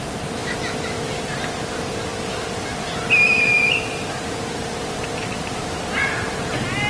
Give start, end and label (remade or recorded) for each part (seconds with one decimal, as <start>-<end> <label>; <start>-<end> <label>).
0.0-6.9 remade